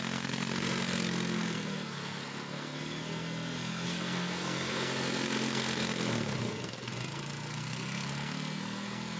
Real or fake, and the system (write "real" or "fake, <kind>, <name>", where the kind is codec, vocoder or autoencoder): fake, codec, SNAC